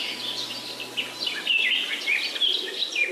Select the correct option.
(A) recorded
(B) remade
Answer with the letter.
A